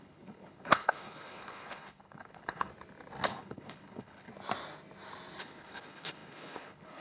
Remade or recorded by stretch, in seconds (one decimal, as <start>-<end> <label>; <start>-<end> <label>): 0.0-2.7 remade; 2.7-3.4 recorded; 3.4-4.3 remade; 4.3-5.4 recorded; 5.4-7.0 remade